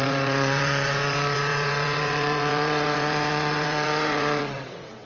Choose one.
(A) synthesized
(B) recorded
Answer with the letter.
A